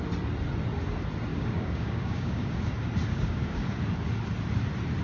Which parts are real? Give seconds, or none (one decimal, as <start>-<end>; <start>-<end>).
0.0-1.3; 2.7-3.1; 3.9-5.0